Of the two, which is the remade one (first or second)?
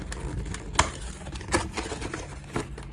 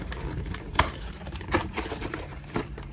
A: second